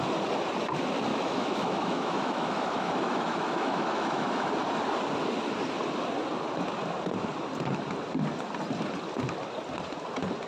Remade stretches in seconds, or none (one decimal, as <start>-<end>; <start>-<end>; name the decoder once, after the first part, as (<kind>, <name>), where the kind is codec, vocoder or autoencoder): 1.1-4.5 (autoencoder, DAC-VAE)